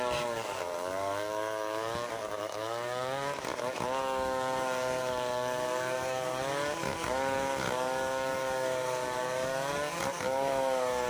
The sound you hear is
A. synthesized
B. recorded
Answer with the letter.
A